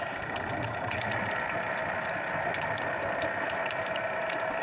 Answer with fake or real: real